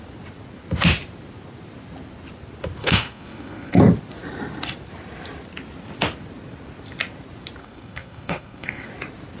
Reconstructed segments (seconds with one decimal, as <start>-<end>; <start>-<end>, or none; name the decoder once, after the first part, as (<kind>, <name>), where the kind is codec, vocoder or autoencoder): 2.8-3.8 (codec, SNAC); 7.6-8.9